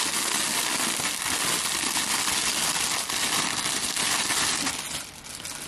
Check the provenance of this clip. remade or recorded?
recorded